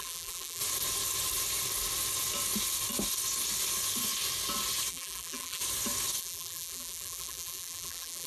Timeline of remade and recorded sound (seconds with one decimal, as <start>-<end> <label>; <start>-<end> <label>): 0.0-0.6 remade; 0.6-4.9 recorded; 4.9-5.6 remade; 5.6-6.2 recorded; 6.2-8.3 remade